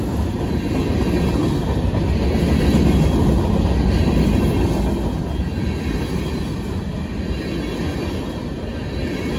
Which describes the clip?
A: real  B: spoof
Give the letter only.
A